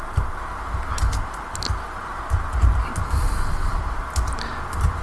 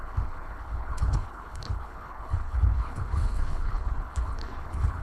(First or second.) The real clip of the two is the first